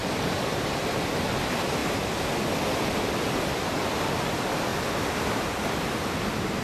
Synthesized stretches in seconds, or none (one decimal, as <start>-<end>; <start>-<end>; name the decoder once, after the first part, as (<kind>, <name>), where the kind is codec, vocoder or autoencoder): 0.8-1.8 (vocoder, BigVGAN v2); 4.0-4.7; 6.1-6.6